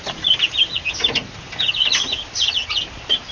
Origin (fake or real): real